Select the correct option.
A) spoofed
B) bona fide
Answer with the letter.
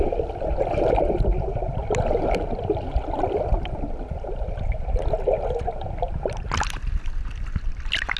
B